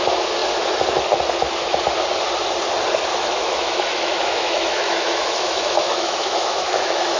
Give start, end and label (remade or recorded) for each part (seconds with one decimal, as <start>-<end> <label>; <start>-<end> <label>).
0.0-3.1 recorded; 3.1-7.2 remade